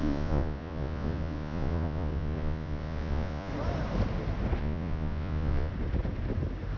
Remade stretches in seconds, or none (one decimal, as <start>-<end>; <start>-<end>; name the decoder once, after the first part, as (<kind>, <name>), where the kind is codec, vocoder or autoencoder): 0.0-3.5 (vocoder, Vocos); 4.6-5.7